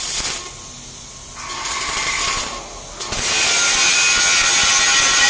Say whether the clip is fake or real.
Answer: real